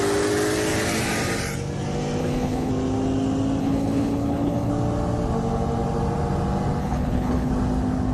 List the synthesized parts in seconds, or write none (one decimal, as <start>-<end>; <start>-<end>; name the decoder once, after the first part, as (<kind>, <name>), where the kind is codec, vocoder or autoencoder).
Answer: 2.2-2.7 (codec, HILCodec); 3.6-4.7; 6.8-7.5